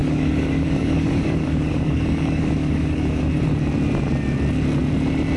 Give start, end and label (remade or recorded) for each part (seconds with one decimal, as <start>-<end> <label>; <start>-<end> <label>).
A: 0.0-3.2 remade; 3.2-5.4 recorded